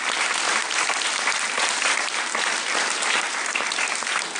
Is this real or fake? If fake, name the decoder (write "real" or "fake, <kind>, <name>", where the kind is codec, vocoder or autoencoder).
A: real